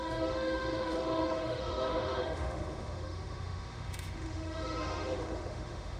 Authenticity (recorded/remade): remade